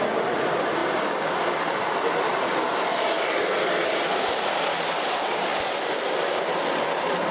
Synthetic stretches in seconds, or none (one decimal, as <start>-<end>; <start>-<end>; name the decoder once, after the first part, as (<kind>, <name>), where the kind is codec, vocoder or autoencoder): 2.3-3.4 (vocoder, BigVGAN v2); 5.5-6.5